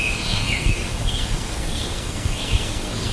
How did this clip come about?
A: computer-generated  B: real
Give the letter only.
A